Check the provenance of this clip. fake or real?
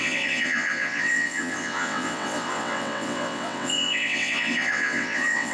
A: fake